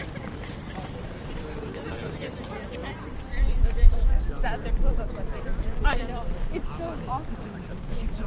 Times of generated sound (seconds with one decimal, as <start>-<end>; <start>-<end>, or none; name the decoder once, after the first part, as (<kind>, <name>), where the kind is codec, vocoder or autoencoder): 0.0-2.8 (vocoder, BigVGAN v2); 4.1-8.3